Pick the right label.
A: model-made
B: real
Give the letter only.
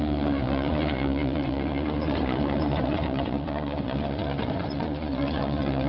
A